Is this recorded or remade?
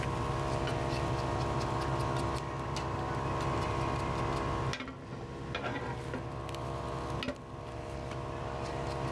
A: recorded